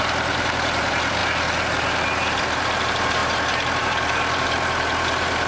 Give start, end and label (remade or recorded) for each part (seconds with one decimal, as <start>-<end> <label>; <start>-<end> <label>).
0.0-1.2 remade; 1.2-2.4 recorded; 2.4-5.5 remade

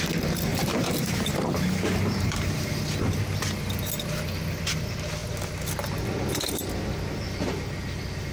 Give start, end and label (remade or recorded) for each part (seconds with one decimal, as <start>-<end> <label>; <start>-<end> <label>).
0.0-0.5 recorded; 0.5-2.7 remade; 2.7-8.3 recorded

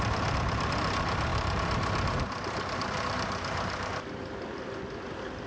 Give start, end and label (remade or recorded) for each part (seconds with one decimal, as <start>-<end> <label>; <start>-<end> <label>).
0.0-1.3 recorded; 1.3-3.9 remade; 3.9-5.5 recorded